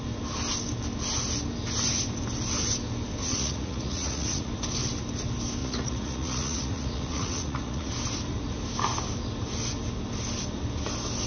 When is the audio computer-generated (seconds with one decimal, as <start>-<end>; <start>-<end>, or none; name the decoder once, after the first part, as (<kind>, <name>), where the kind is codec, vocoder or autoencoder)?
3.2-4.5 (vocoder, Vocos); 5.6-7.9